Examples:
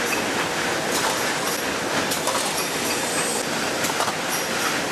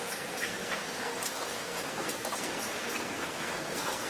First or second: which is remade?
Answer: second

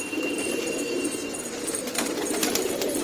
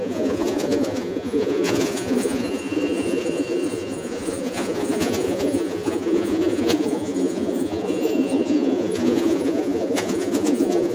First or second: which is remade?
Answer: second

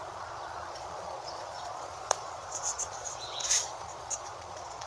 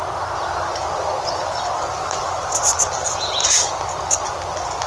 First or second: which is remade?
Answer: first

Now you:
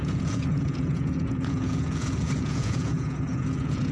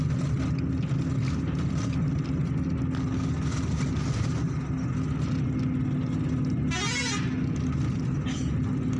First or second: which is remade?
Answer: first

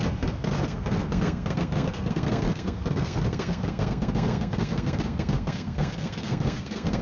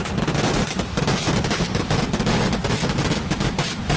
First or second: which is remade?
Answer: first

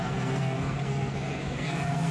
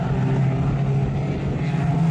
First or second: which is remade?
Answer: first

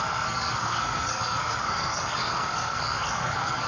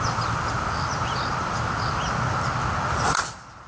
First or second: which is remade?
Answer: first